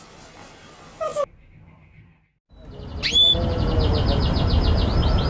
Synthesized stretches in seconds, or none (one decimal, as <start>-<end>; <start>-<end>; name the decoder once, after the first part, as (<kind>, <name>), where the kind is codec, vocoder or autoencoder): none